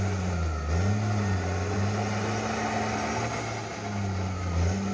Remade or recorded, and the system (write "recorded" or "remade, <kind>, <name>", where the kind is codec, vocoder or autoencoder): recorded